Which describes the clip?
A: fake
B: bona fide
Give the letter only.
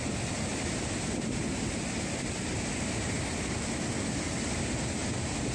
B